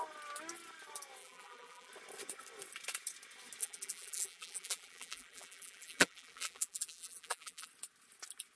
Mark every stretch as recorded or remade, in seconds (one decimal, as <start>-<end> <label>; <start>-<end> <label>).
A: 0.0-1.2 recorded; 1.2-1.9 remade; 1.9-3.6 recorded; 3.6-7.7 remade; 7.7-8.6 recorded